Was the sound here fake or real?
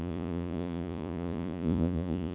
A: fake